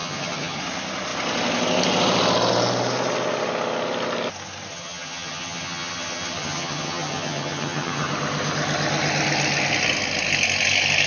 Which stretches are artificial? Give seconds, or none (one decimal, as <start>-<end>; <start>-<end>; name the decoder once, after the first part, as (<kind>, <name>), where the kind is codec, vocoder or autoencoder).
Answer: 0.0-0.6 (vocoder, HiFi-GAN); 4.7-8.1